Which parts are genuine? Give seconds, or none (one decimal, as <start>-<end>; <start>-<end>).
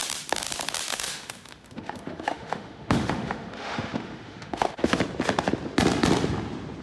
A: 0.0-0.9; 5.0-6.8